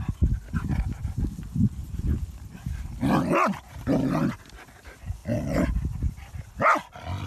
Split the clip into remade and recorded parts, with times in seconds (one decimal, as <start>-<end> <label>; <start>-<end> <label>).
0.0-1.8 recorded; 1.8-2.7 remade; 2.7-7.3 recorded